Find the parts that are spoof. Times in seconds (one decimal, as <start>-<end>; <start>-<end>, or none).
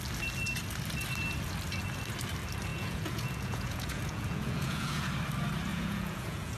2.7-5.1; 5.7-6.6